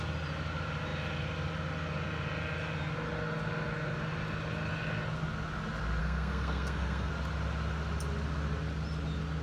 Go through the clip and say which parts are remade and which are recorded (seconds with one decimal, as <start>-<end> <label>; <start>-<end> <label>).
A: 0.0-6.0 recorded; 6.0-7.1 remade; 7.1-9.4 recorded